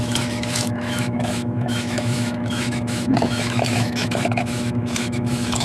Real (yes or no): no